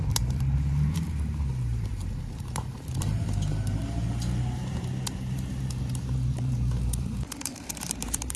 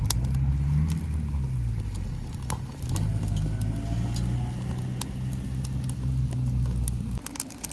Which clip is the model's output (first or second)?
first